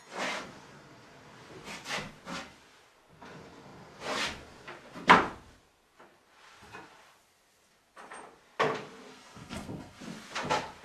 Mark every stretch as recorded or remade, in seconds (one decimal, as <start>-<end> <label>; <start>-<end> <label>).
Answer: 0.0-9.1 recorded; 9.1-10.0 remade; 10.0-10.8 recorded